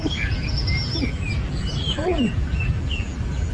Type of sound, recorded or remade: remade